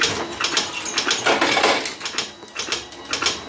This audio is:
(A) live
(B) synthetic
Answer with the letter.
A